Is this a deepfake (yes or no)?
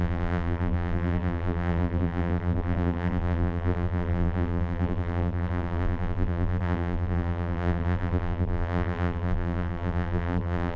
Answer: yes